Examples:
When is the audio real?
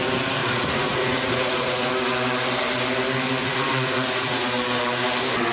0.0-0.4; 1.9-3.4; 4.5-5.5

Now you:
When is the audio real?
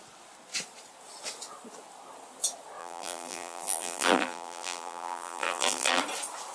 0.0-2.8; 6.0-6.5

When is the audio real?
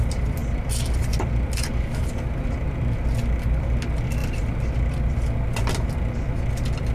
0.0-4.2; 4.7-6.9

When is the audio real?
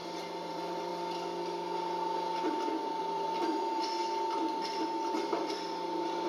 0.0-0.5; 0.9-3.0; 4.0-5.2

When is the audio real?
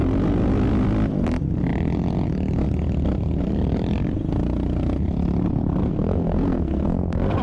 0.0-5.8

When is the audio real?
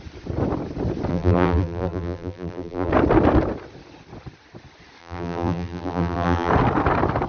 0.0-1.1; 2.9-5.0; 6.5-7.3